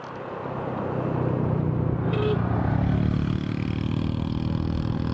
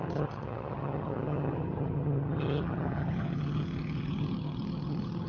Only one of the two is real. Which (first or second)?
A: first